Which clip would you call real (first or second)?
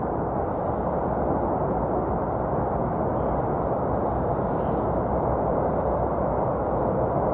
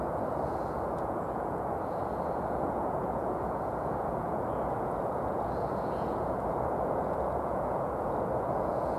first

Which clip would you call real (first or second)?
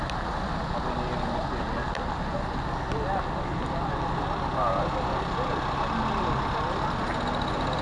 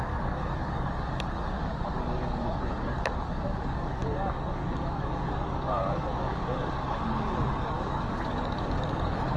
first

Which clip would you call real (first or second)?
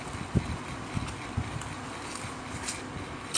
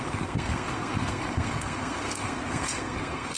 first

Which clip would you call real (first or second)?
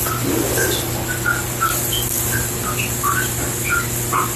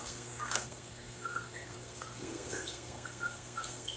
first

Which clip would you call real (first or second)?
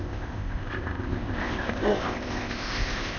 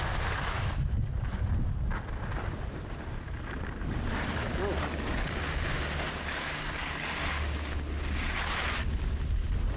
second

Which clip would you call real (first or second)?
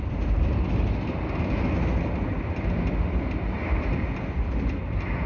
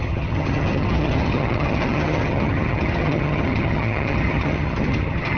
first